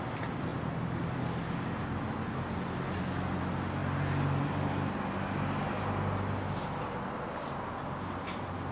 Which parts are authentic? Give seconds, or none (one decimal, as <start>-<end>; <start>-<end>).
0.0-8.7